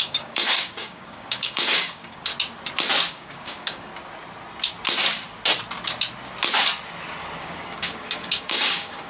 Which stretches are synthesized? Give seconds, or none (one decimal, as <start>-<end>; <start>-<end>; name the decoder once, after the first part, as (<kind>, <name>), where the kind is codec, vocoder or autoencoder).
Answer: 0.0-2.3 (codec, DAC); 3.1-3.9; 7.4-9.1

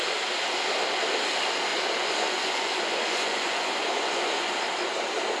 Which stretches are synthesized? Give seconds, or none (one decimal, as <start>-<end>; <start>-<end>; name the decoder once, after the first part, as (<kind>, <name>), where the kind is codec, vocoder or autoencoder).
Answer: 1.7-4.5 (vocoder, Vocos)

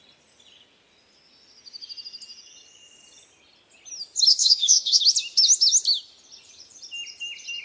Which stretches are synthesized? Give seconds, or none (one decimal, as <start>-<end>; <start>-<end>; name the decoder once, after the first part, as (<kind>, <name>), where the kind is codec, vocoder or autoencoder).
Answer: 4.3-5.0 (autoencoder, DAC-VAE)

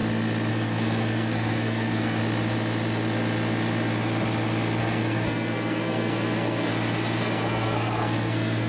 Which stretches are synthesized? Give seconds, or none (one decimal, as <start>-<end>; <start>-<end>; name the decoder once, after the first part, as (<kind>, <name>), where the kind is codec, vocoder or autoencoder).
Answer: 0.5-2.2 (codec, SNAC); 4.8-6.7; 7.2-8.7

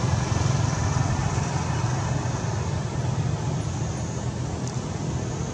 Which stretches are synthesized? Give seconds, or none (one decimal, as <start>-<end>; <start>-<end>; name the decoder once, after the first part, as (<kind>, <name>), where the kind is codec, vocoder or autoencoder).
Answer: none

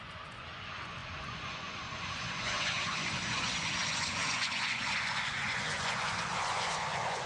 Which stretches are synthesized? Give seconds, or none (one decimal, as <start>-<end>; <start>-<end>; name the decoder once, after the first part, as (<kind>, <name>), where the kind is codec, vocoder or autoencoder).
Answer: 0.0-7.3 (vocoder, Vocos)